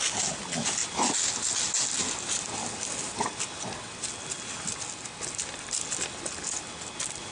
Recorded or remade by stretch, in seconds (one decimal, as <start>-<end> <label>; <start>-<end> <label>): 0.0-7.3 recorded